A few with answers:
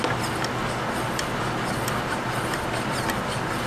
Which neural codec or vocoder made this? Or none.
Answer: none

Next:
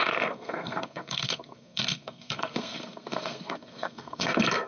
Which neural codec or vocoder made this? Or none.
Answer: codec, SNAC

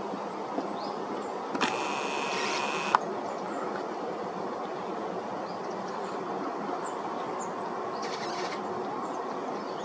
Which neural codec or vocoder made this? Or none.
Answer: none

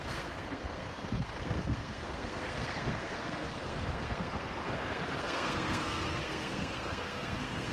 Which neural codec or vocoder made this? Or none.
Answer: codec, SNAC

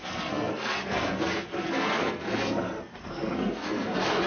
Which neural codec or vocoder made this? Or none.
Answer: codec, SNAC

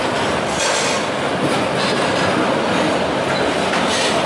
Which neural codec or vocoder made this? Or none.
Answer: none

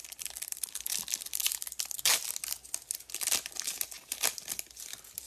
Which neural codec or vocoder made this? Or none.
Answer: none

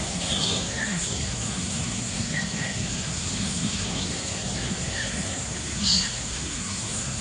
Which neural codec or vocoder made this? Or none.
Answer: codec, SNAC